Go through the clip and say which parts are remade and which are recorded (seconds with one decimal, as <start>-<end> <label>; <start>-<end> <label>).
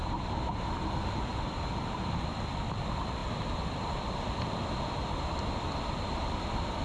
0.0-1.3 remade; 1.3-3.2 recorded; 3.2-6.8 remade